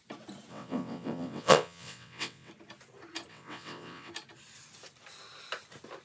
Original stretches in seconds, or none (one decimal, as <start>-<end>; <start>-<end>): 0.0-0.5; 2.5-3.3; 4.1-6.0